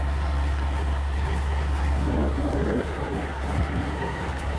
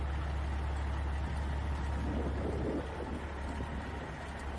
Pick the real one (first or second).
second